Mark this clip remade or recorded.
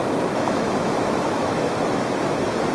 remade